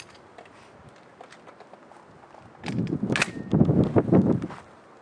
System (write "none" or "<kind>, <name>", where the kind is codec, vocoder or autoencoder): none